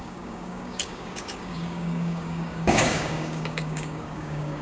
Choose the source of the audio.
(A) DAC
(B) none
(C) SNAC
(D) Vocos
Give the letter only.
A